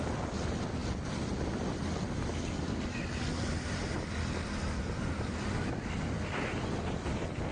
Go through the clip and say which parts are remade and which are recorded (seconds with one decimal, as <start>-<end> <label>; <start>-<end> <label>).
0.0-7.5 recorded